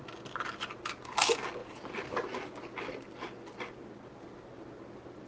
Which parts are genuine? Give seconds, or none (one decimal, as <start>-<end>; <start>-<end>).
0.0-5.3